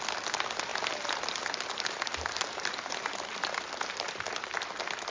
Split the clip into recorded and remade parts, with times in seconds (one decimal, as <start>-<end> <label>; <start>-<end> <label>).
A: 0.0-0.7 recorded; 0.7-1.2 remade; 1.2-2.1 recorded; 2.1-3.7 remade; 3.7-5.1 recorded